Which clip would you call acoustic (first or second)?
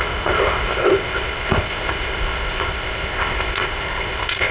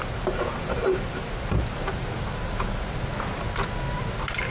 second